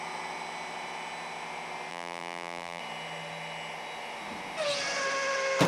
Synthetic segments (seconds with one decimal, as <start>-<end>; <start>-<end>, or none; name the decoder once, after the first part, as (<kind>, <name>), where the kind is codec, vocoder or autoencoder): 1.9-2.8 (vocoder, BigVGAN v2)